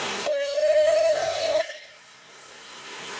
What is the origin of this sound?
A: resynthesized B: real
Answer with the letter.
A